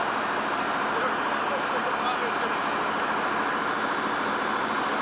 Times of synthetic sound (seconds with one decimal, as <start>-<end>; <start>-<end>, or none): none